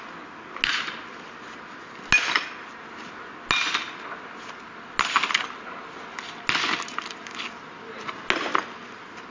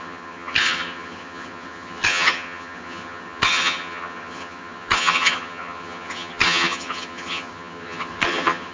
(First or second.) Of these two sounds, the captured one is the first